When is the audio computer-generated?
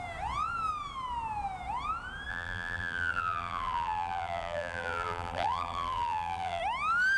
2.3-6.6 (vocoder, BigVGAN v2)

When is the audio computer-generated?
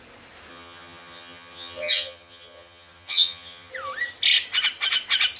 0.5-3.7 (vocoder, HiFi-GAN)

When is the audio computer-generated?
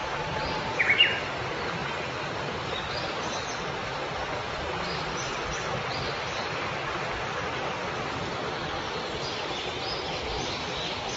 none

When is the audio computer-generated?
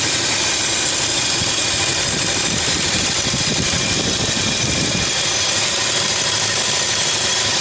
none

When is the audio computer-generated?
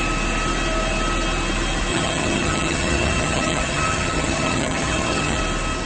1.9-5.4 (vocoder, HiFi-GAN)